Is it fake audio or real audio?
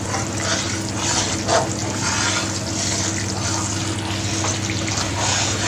real